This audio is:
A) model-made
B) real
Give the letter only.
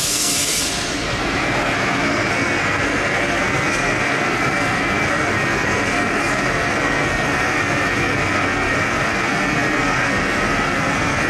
A